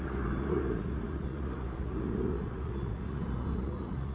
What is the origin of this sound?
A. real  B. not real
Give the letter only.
B